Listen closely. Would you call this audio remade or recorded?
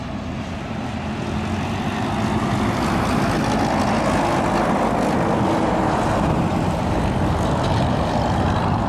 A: recorded